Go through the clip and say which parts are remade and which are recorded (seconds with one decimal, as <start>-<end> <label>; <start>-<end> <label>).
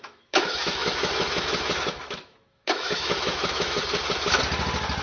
0.0-3.8 remade; 3.8-5.0 recorded